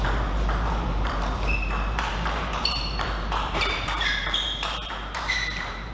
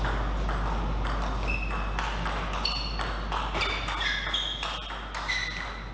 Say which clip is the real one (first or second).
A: second